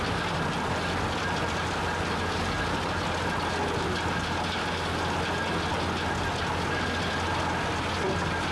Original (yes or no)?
yes